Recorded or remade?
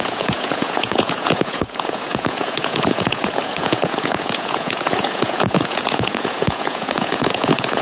remade